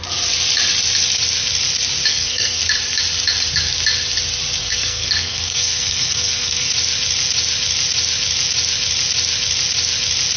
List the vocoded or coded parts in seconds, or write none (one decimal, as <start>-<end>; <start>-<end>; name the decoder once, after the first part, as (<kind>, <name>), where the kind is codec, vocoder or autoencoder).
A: 2.1-2.6 (codec, SNAC); 4.6-6.7